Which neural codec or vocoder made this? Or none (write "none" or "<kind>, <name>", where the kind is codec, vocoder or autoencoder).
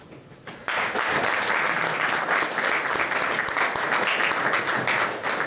none